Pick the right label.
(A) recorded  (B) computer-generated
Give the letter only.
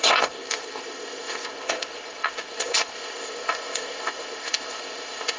B